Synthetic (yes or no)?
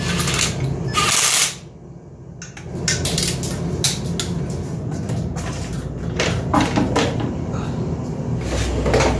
no